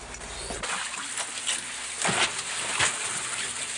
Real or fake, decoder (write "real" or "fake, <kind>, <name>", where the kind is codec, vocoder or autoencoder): real